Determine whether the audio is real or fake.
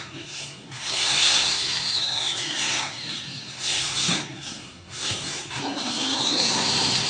fake